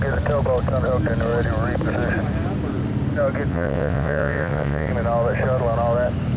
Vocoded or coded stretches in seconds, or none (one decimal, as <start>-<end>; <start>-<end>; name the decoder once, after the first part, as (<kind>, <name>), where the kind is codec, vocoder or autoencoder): 3.5-4.9 (vocoder, WaveNeXt)